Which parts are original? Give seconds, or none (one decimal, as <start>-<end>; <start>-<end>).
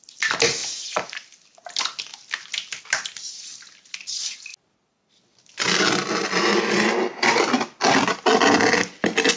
0.0-9.4